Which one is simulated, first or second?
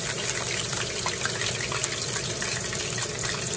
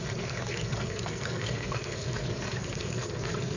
second